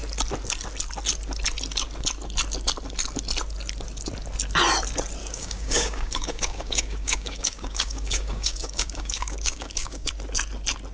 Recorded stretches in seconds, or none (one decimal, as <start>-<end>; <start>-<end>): 0.0-5.2; 10.1-10.9